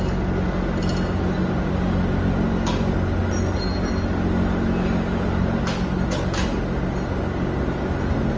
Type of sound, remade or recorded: recorded